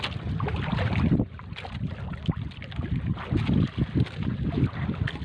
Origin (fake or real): real